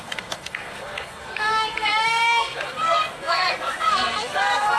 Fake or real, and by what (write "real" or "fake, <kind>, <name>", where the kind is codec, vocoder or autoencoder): fake, codec, SNAC